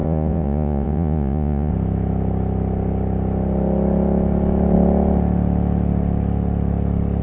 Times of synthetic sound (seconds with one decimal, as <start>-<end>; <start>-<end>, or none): 0.0-1.7